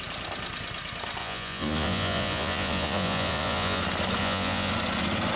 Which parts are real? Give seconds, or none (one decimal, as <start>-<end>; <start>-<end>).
0.0-1.2; 3.8-4.2; 4.7-5.4